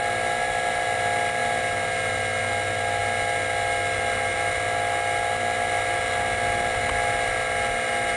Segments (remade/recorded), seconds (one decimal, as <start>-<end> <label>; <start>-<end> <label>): 0.0-8.2 recorded